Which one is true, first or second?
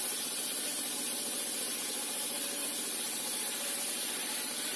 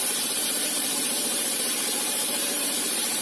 first